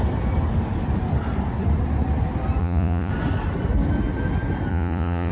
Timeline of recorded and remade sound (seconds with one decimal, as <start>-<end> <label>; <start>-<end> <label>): 0.0-2.6 recorded; 2.6-3.1 remade; 3.1-4.7 recorded; 4.7-5.3 remade

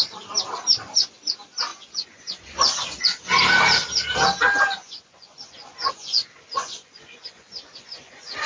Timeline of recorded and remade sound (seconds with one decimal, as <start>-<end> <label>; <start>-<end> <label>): 0.0-1.7 recorded; 1.7-3.0 remade; 3.0-4.8 recorded; 4.8-8.5 remade